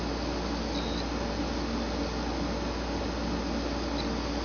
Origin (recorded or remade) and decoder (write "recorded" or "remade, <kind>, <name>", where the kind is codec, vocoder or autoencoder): recorded